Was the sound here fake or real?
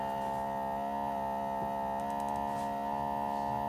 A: real